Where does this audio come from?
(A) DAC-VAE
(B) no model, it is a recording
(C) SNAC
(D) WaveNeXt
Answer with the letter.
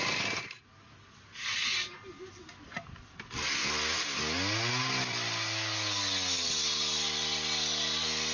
B